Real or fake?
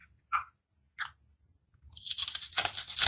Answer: real